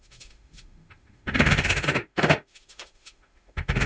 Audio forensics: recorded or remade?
remade